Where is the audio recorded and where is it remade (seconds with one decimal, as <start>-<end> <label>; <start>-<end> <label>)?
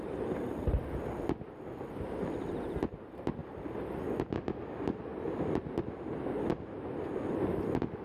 0.0-8.0 recorded